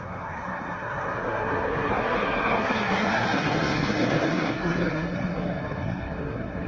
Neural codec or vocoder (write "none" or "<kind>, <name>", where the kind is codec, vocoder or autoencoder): codec, SNAC